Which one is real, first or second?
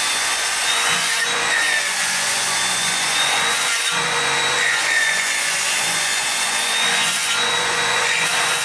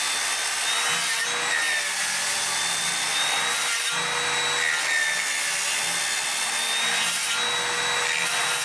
second